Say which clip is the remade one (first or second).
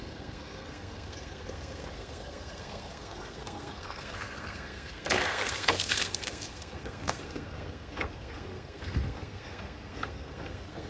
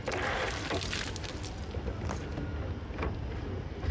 first